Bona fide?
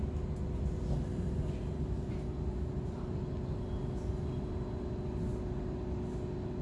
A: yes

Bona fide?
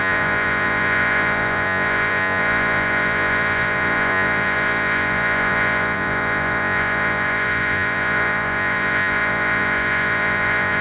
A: no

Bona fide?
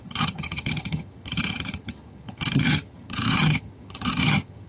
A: no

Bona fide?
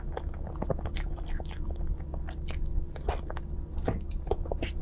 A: yes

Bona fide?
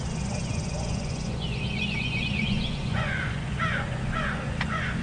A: no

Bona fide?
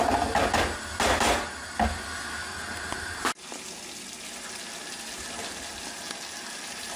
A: yes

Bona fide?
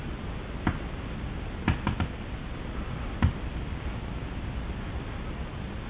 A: yes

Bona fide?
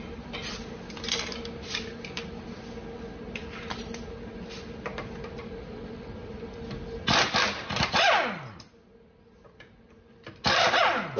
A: yes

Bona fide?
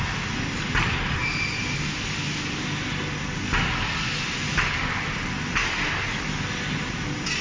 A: yes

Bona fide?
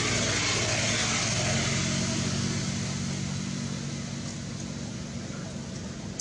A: yes